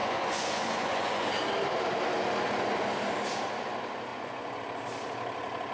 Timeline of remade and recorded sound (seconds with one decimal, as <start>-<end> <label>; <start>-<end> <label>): 0.0-1.3 remade; 1.3-4.1 recorded; 4.1-4.6 remade; 4.6-5.7 recorded